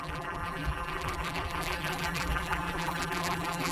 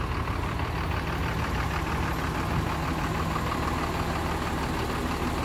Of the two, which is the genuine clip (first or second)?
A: second